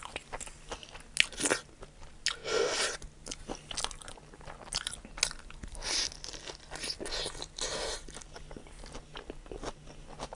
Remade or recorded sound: recorded